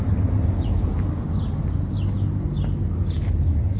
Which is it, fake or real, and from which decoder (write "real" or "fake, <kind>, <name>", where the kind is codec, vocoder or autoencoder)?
real